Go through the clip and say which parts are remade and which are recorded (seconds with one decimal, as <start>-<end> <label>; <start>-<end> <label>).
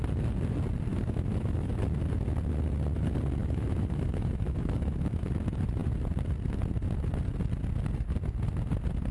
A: 0.0-0.9 recorded; 0.9-1.7 remade; 1.7-3.4 recorded; 3.4-5.3 remade; 5.3-9.1 recorded